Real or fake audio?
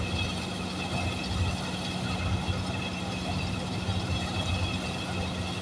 real